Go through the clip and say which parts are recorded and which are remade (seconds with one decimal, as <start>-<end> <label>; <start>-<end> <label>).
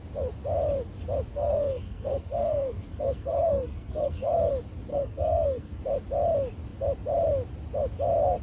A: 0.0-1.3 recorded; 1.3-4.5 remade; 4.5-4.9 recorded; 4.9-5.8 remade; 5.8-8.4 recorded